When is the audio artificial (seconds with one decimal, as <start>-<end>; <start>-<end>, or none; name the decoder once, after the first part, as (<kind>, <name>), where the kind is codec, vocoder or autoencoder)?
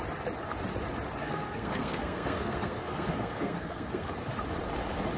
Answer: 1.2-4.1 (codec, SNAC)